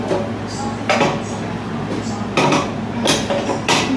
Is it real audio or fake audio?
real